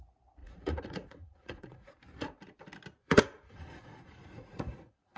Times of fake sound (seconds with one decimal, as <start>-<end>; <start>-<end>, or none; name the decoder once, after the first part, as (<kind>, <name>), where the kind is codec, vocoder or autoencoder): 0.4-1.9 (vocoder, Vocos); 3.0-5.2